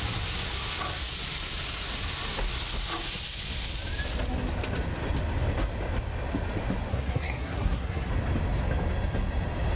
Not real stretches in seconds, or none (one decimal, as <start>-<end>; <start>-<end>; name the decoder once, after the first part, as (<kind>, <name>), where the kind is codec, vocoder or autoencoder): 6.9-8.1 (codec, SNAC)